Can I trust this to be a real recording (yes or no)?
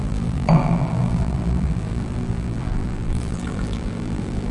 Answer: no